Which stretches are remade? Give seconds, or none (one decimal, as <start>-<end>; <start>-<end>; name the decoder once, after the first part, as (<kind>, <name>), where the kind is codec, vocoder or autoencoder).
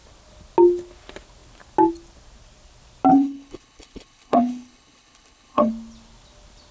3.1-5.7 (codec, HILCodec)